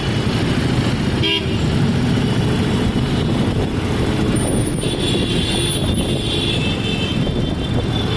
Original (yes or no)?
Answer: yes